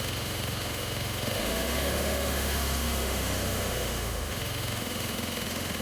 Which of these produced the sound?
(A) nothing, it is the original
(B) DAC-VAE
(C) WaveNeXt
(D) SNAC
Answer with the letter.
B